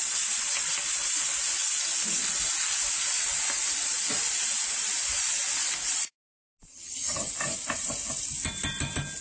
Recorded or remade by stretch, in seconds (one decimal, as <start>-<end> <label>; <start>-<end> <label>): 0.0-6.7 recorded; 6.7-7.3 remade; 7.3-9.2 recorded

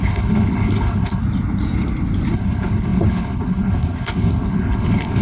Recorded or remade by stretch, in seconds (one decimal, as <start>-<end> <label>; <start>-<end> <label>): 0.0-1.2 remade; 1.2-2.3 recorded; 2.3-5.2 remade

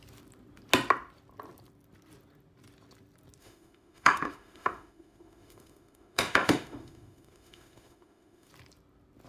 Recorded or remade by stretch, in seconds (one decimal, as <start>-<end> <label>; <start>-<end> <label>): 0.0-3.4 recorded; 3.4-8.5 remade; 8.5-9.3 recorded